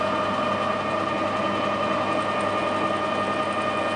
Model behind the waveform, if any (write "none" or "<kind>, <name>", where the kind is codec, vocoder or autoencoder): none